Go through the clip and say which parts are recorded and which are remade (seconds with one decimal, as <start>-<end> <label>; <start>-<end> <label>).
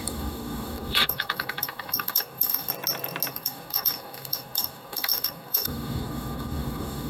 0.0-2.7 remade; 2.7-3.3 recorded; 3.3-7.1 remade